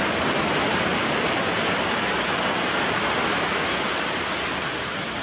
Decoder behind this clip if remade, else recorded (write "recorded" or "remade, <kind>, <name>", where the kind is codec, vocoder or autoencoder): recorded